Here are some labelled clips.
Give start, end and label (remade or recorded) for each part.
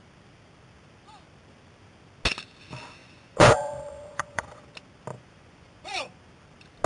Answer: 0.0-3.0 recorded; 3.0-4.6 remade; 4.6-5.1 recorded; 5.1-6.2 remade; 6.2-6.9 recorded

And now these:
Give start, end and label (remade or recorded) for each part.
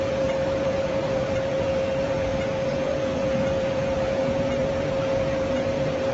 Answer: 0.0-6.1 remade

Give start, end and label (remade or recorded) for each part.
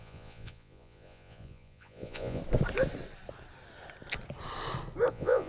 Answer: 0.0-2.4 remade; 2.4-5.1 recorded; 5.1-5.5 remade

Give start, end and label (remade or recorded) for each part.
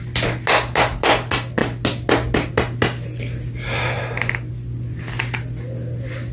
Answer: 0.0-6.3 recorded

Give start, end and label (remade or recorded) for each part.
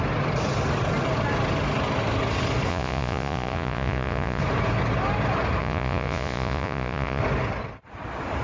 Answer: 0.0-2.7 recorded; 2.7-4.4 remade; 4.4-5.6 recorded; 5.6-7.2 remade; 7.2-8.4 recorded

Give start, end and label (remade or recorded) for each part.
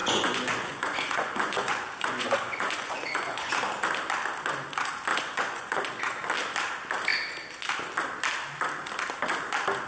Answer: 0.0-3.5 remade; 3.5-5.1 recorded; 5.1-6.1 remade; 6.1-9.9 recorded